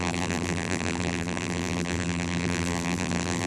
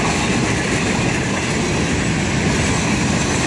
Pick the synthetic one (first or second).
first